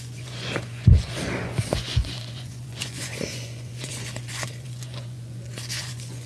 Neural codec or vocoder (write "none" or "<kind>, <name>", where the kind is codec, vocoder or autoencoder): vocoder, Vocos